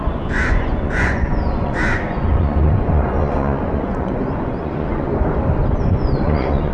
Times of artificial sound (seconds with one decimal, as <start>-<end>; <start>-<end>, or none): 0.0-5.1; 5.9-6.7